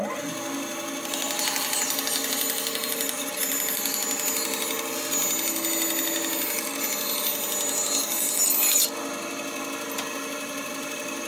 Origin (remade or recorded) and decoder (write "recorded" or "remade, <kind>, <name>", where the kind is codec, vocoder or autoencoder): recorded